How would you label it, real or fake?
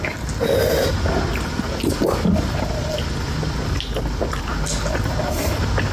real